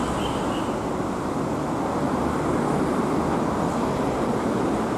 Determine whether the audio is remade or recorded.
recorded